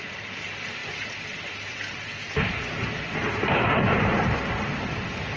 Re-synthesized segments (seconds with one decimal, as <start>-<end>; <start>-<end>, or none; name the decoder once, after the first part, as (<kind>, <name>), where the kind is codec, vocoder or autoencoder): 0.0-5.4 (vocoder, BigVGAN v2)